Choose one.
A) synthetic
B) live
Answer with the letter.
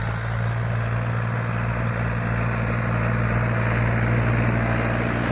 B